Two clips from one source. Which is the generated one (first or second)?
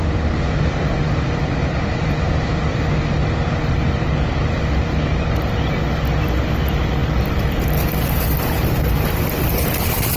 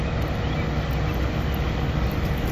first